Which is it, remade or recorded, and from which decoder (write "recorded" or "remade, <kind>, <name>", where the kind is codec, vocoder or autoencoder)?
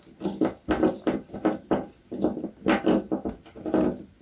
recorded